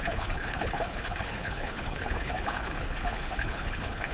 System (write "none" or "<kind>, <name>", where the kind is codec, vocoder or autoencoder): codec, HILCodec